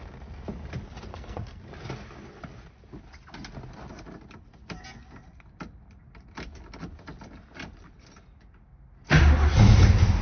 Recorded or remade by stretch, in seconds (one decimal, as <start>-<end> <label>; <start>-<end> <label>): 0.0-1.1 recorded; 1.1-1.6 remade; 1.6-10.2 recorded